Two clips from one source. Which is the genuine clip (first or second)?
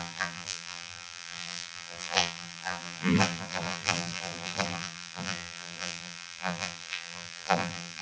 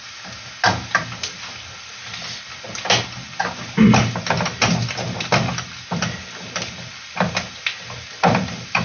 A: second